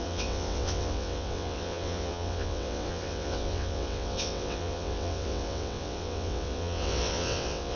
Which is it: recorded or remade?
remade